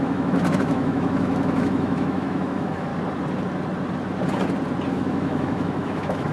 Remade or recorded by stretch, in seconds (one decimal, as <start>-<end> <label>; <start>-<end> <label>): 0.0-2.9 remade; 2.9-4.9 recorded; 4.9-6.3 remade